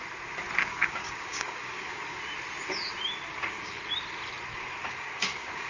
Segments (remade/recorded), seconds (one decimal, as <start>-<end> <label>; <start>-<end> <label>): 0.0-0.7 recorded; 0.7-2.2 remade; 2.2-3.3 recorded; 3.3-3.8 remade; 3.8-4.5 recorded; 4.5-5.7 remade